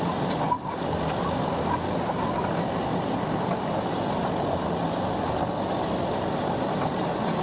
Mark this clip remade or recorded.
recorded